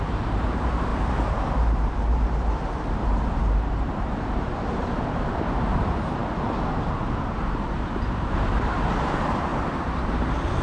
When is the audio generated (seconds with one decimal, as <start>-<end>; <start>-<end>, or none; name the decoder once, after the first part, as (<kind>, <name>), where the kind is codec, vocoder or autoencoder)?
0.0-6.2 (vocoder, BigVGAN v2); 7.3-9.5